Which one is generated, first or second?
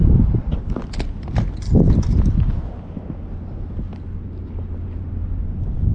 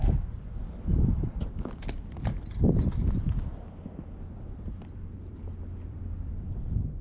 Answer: second